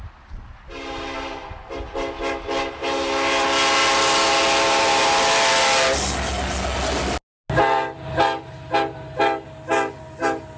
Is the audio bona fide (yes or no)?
yes